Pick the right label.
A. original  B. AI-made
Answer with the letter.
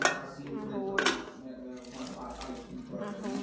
A